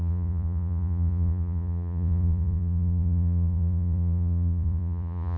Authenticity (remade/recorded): remade